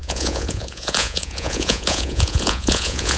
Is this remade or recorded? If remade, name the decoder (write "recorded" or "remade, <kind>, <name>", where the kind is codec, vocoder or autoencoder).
remade, vocoder, Vocos